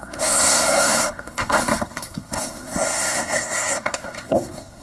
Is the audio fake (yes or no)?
yes